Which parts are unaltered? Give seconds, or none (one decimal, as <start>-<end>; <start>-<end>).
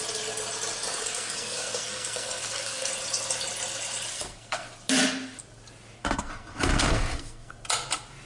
0.0-0.9; 2.9-4.1; 4.7-6.0; 7.5-8.3